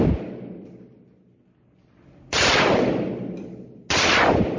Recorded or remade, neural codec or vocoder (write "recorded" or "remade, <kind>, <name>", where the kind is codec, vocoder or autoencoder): recorded